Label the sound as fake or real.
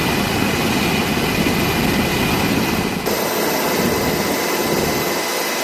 real